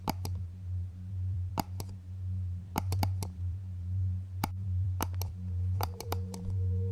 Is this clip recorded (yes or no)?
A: no